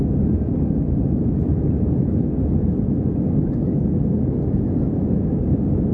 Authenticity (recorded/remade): recorded